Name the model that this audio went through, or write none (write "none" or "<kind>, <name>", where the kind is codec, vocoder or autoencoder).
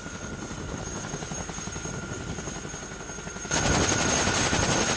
none